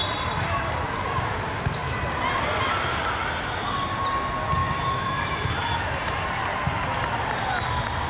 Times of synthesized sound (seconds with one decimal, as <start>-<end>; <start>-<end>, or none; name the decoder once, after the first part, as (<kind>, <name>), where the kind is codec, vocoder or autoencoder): 0.0-0.7 (vocoder, BigVGAN v2); 1.8-2.4; 4.6-6.7